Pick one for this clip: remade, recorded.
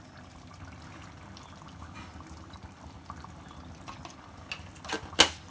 recorded